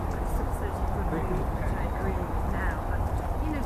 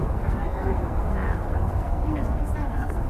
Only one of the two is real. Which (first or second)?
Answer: first